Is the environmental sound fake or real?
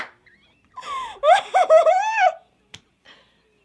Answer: real